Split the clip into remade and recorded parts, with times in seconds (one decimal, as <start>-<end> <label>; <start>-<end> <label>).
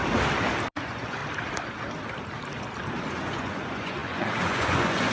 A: 0.0-0.7 recorded; 0.7-1.2 remade; 1.2-3.1 recorded; 3.1-5.1 remade